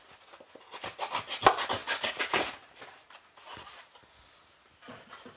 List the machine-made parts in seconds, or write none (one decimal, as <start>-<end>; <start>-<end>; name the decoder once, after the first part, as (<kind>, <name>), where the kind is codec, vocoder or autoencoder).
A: none